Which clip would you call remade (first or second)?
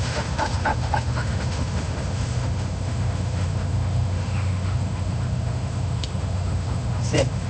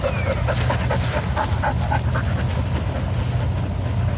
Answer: first